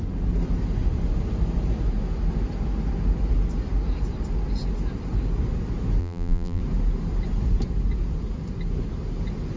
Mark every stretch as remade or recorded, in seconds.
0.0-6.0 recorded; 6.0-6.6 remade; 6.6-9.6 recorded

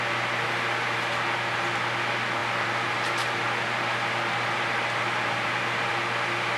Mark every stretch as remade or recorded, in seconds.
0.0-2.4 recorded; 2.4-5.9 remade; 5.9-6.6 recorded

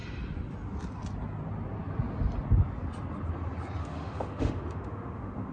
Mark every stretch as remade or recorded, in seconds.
0.0-3.8 recorded; 3.8-5.5 remade